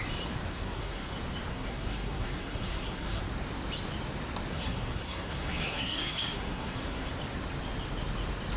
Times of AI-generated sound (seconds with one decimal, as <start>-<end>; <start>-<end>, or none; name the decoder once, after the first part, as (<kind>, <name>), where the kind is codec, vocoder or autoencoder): 0.5-1.1 (codec, SNAC); 1.5-3.2; 4.5-7.1